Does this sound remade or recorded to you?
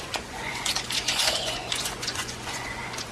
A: remade